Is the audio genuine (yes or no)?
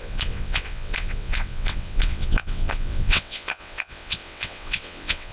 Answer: no